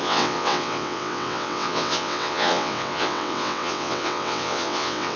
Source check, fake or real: fake